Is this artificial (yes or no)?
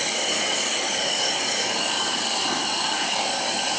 yes